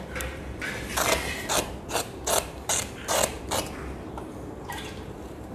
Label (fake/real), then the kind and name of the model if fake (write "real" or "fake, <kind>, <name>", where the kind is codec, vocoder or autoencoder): fake, vocoder, BigVGAN v2